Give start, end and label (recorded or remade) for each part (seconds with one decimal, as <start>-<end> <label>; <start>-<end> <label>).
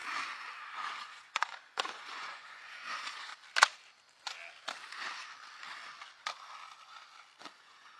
0.0-1.0 recorded; 1.0-3.3 remade; 3.3-7.4 recorded; 7.4-8.0 remade